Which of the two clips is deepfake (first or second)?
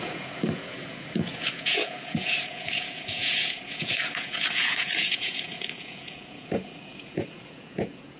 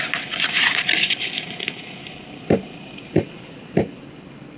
first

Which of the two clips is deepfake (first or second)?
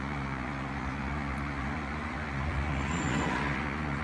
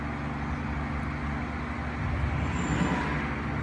first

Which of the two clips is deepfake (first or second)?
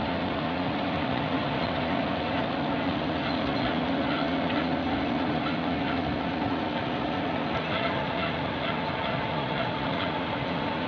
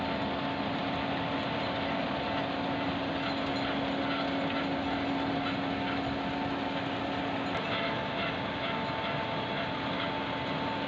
first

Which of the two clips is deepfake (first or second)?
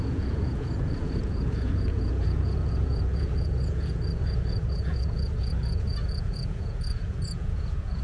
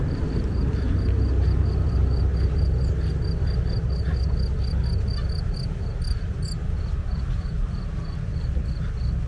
first